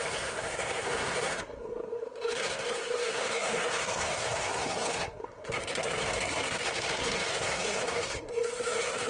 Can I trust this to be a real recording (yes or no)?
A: no